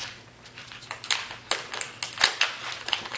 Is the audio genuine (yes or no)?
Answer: yes